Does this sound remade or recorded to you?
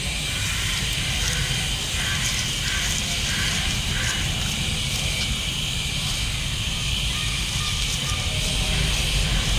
recorded